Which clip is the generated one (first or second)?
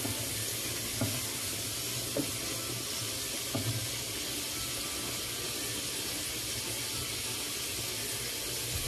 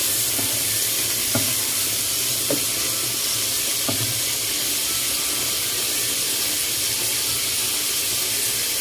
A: second